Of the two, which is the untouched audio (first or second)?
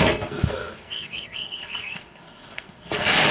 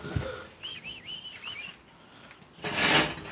second